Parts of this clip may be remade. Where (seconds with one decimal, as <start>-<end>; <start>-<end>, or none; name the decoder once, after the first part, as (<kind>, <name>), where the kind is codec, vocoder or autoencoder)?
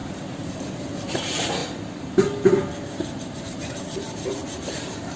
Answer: 1.1-1.6 (vocoder, BigVGAN v2); 3.4-5.2